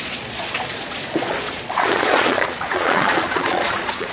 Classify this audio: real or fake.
fake